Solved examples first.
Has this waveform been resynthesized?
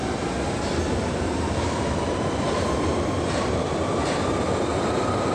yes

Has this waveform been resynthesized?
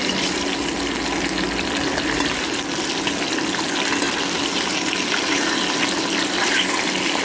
no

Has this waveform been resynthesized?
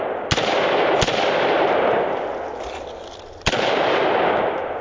no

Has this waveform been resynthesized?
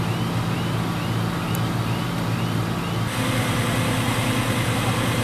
no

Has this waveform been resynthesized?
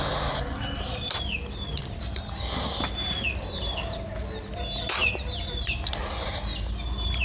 no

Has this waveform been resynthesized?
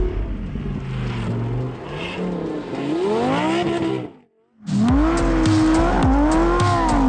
no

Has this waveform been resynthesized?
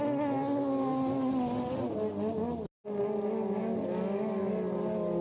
no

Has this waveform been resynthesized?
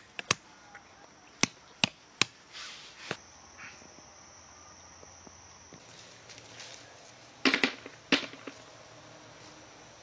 no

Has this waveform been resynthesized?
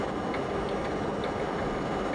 no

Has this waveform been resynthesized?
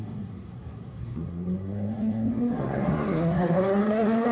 yes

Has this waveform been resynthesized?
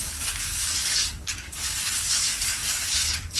yes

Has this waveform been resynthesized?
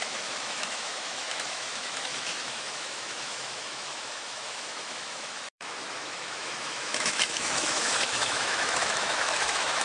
yes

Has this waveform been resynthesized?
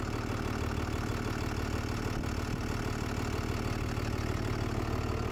no